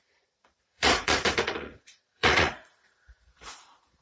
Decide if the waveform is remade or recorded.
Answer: remade